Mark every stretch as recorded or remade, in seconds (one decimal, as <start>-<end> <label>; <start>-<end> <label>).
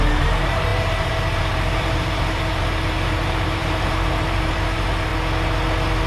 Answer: 0.0-5.1 remade; 5.1-6.1 recorded